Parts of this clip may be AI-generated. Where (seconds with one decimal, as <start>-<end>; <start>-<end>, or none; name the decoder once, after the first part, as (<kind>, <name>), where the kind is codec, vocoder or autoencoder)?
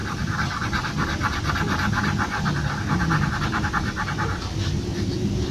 none